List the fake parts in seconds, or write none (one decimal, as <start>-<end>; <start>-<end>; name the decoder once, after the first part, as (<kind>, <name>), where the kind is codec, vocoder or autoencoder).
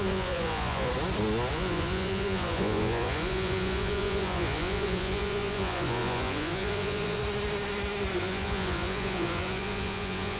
0.0-0.9 (vocoder, Vocos); 1.5-7.2; 8.2-10.4